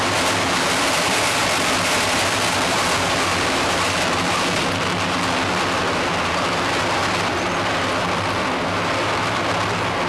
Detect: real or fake fake